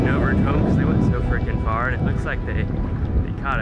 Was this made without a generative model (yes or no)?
yes